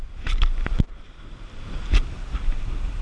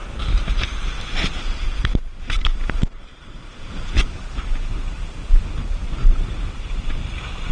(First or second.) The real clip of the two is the first